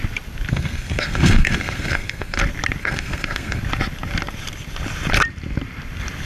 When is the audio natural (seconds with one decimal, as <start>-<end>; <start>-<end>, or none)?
0.0-0.5; 2.4-2.8; 3.6-6.3